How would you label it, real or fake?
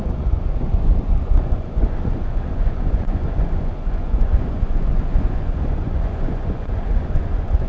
fake